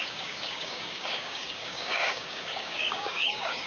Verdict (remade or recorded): remade